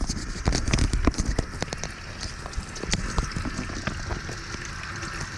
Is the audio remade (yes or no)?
no